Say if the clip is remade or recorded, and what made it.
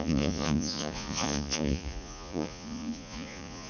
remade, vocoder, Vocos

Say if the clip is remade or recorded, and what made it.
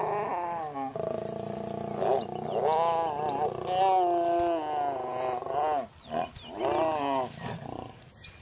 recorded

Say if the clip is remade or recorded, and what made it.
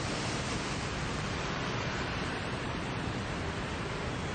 remade, vocoder, BigVGAN v2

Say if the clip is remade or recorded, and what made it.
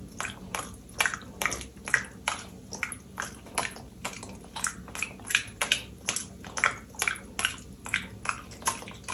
recorded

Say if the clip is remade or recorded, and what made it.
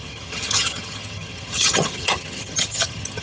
remade, vocoder, HiFi-GAN